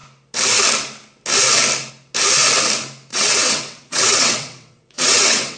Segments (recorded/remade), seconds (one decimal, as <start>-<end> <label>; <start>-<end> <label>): 0.0-3.1 recorded; 3.1-5.6 remade